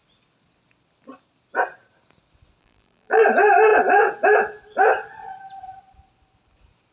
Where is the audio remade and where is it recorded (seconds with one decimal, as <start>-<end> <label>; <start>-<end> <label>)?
0.0-2.6 recorded; 2.6-3.2 remade; 3.2-6.9 recorded